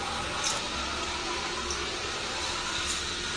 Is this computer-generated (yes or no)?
no